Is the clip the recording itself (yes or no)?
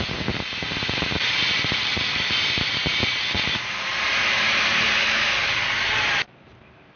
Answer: no